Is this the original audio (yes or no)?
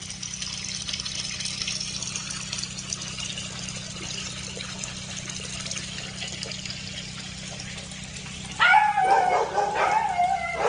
yes